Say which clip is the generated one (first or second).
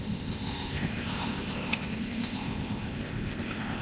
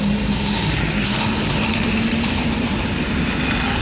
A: first